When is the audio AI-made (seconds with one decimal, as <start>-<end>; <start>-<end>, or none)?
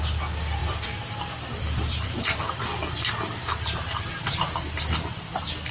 0.6-2.4; 3.5-4.8